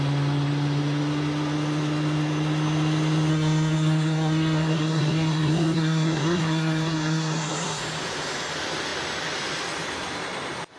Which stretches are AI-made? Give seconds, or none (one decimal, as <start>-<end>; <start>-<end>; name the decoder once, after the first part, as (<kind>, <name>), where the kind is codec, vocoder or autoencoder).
3.3-7.8 (codec, SNAC)